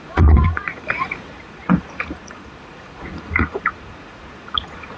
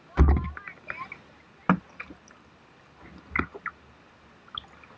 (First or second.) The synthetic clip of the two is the first